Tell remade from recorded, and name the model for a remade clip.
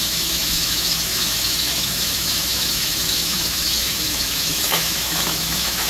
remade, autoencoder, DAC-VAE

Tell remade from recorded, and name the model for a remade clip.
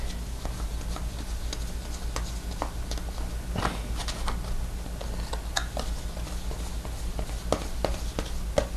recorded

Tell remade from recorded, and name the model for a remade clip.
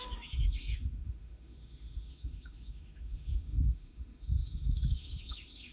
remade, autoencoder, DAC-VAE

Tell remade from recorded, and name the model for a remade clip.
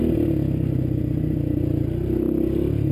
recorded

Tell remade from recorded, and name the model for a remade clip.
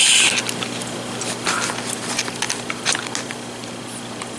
recorded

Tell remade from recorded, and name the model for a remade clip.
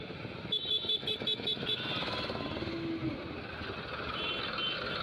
recorded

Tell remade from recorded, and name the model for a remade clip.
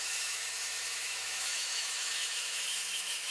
remade, autoencoder, DAC-VAE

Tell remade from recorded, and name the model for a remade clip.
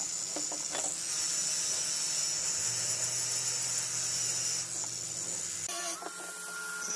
recorded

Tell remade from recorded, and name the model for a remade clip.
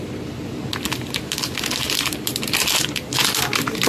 recorded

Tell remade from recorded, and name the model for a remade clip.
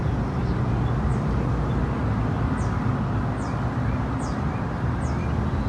recorded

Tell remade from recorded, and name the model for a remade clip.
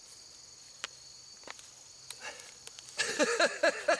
recorded